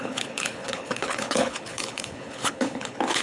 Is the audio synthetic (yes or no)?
yes